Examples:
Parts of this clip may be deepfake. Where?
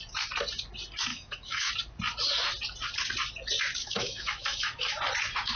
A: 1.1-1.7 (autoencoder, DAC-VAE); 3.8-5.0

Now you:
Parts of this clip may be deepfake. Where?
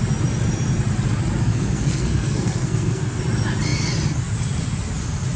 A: 1.4-3.2 (codec, SNAC)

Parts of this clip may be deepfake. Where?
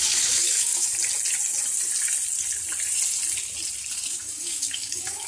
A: 0.0-0.9 (codec, DAC); 4.1-5.3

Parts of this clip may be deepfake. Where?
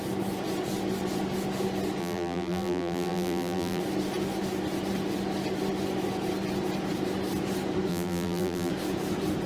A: 2.0-3.8 (vocoder, BigVGAN v2); 7.9-8.7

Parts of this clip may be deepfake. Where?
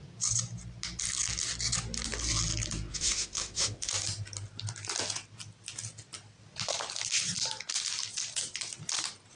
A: 2.9-3.9 (autoencoder, DAC-VAE)